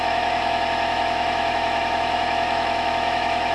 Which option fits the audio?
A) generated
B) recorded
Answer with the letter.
A